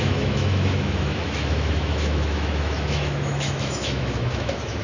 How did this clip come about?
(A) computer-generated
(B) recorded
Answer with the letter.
A